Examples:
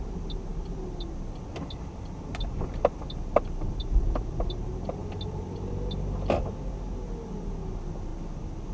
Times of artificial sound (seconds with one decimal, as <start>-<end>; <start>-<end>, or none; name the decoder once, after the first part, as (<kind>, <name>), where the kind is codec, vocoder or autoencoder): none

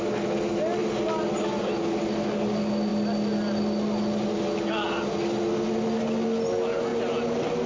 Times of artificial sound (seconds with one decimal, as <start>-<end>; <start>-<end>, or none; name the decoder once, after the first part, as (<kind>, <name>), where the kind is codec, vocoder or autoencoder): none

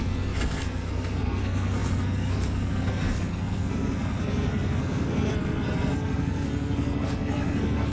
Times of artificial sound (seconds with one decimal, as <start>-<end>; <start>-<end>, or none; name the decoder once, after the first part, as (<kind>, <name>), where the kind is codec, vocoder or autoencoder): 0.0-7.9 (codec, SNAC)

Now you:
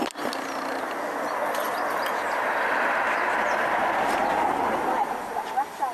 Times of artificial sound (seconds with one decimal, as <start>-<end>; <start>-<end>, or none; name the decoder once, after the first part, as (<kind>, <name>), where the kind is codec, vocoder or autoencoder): none

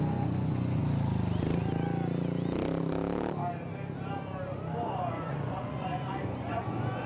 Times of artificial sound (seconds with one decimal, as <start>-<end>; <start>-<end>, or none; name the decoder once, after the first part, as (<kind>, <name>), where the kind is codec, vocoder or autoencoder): 0.0-0.8 (vocoder, Vocos); 5.1-7.1